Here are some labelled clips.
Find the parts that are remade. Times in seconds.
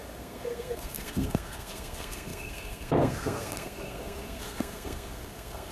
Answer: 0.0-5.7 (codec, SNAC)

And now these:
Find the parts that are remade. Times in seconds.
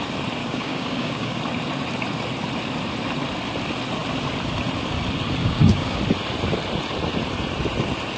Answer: 0.4-1.4 (codec, DAC); 5.4-6.0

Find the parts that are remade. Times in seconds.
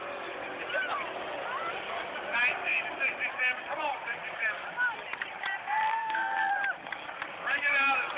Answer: 5.6-6.5 (codec, SNAC)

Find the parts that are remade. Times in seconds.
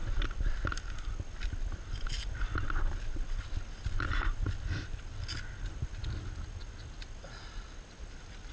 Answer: 0.0-8.5 (vocoder, BigVGAN v2)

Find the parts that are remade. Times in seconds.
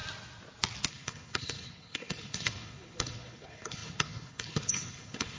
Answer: 0.9-5.4 (codec, HILCodec)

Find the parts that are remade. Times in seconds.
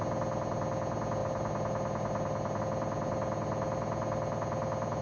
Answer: none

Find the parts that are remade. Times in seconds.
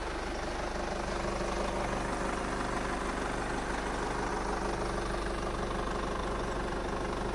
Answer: 6.2-6.7 (vocoder, Vocos)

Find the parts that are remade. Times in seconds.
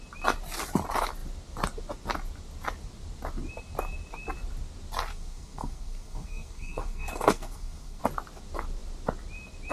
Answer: 5.1-8.0 (codec, SNAC)